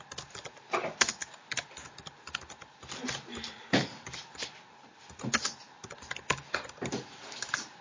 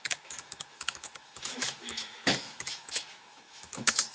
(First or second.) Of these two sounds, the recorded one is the first